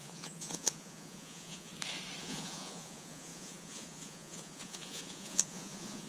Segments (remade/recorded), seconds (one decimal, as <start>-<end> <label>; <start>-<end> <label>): 0.0-1.7 remade; 1.7-2.2 recorded; 2.2-6.1 remade